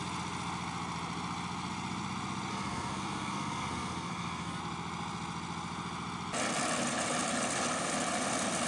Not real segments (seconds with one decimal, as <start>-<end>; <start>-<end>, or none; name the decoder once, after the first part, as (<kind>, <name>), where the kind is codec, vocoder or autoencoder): 2.5-4.6 (codec, SNAC)